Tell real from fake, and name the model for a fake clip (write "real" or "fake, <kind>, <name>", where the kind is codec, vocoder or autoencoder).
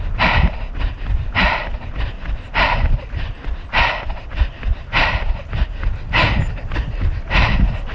real